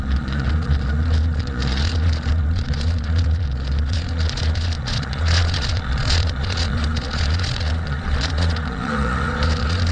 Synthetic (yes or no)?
yes